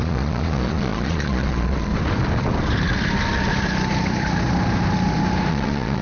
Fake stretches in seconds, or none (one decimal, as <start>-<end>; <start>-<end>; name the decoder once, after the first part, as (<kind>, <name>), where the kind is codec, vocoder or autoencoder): 0.0-1.9 (vocoder, Vocos); 5.5-6.0